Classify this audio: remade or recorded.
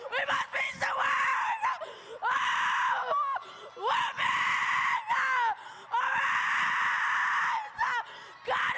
recorded